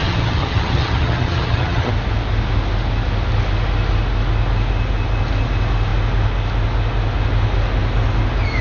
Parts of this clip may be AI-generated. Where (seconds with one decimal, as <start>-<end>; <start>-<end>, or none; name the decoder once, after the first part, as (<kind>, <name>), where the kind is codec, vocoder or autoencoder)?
0.0-1.9 (vocoder, HiFi-GAN)